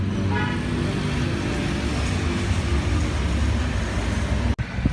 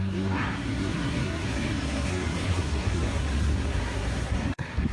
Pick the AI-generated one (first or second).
second